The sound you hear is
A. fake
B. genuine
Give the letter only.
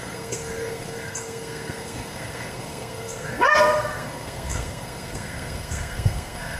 A